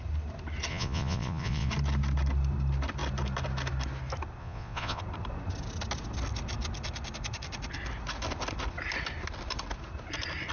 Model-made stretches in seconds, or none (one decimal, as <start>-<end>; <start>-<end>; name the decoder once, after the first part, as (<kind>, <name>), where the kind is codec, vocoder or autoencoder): 0.7-1.7 (vocoder, Vocos); 4.4-5.0